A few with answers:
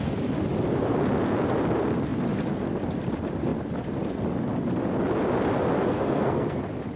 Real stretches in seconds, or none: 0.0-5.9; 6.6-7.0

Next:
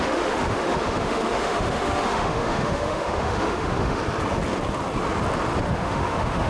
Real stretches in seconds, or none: 4.0-5.7

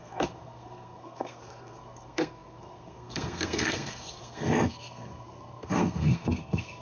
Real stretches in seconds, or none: none